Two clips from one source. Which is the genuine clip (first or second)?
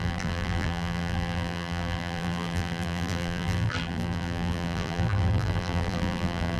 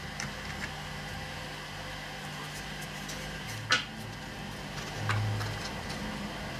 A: second